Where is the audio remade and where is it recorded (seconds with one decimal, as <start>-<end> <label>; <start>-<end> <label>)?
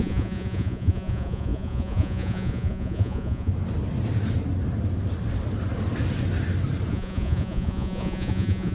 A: 0.0-3.5 remade; 3.5-6.9 recorded; 6.9-8.7 remade